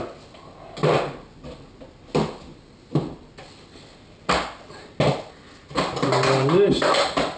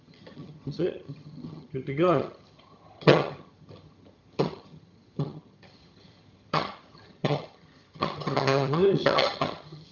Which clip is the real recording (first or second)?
first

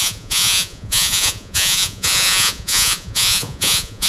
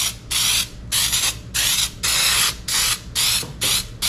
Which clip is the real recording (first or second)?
second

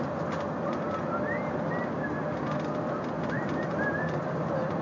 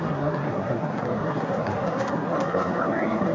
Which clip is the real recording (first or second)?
first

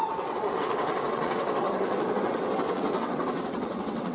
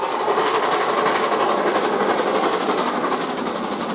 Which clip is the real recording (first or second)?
second